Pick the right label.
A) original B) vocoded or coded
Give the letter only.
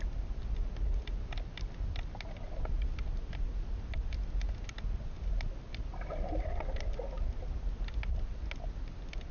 A